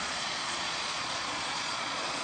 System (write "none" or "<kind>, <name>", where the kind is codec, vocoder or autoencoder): vocoder, Vocos